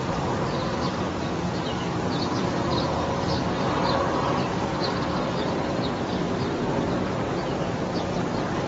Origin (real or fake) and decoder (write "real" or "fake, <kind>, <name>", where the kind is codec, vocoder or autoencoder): real